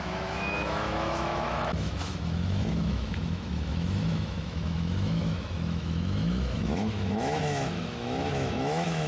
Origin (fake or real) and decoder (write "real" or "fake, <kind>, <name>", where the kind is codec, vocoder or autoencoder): fake, autoencoder, DAC-VAE